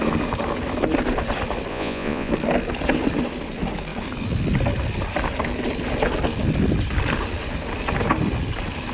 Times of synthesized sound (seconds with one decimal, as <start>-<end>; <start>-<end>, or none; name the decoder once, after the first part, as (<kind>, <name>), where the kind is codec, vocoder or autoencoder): 1.7-2.3 (vocoder, Vocos)